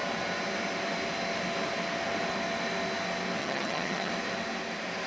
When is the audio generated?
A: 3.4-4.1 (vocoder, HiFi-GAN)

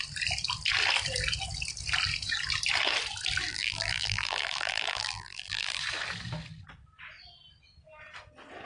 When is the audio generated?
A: 3.5-5.8 (vocoder, BigVGAN v2)

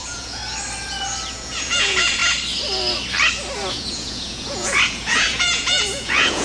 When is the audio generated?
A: 0.0-0.4 (vocoder, Vocos); 1.3-2.2; 3.7-6.4

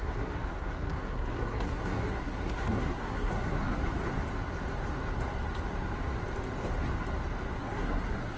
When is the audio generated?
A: 0.0-3.8 (codec, SNAC); 7.6-8.4

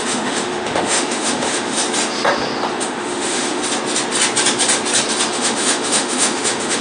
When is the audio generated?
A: 0.0-1.8 (autoencoder, DAC-VAE); 2.7-3.6; 5.3-6.8